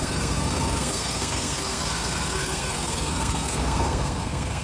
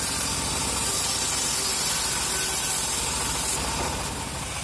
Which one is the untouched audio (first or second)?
second